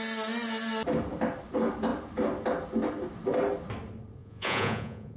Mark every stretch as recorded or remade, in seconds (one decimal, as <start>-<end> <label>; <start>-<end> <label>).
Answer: 0.0-4.2 recorded; 4.2-5.2 remade